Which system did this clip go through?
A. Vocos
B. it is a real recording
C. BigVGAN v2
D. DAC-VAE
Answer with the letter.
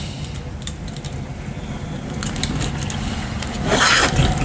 C